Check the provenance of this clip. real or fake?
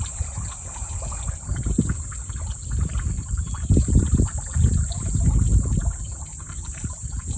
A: real